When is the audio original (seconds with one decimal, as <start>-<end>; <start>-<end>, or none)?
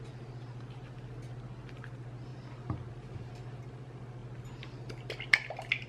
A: 0.0-5.9